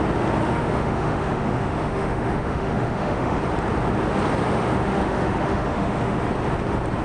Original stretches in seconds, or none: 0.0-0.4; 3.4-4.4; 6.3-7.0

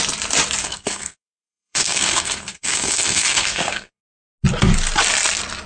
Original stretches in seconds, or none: 0.0-0.6; 4.0-5.7

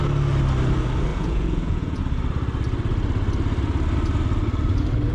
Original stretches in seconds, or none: 0.0-1.1; 2.0-5.1